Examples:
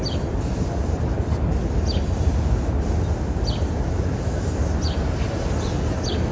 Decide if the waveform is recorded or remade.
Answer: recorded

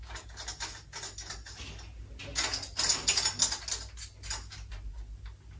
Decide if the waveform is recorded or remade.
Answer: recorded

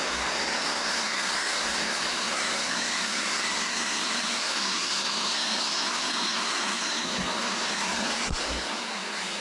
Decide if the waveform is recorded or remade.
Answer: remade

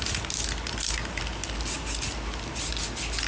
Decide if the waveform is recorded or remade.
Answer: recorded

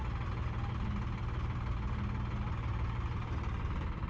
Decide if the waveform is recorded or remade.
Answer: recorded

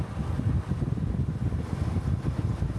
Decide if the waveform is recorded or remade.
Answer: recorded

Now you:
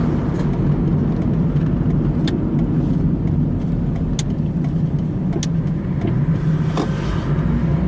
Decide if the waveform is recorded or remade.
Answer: recorded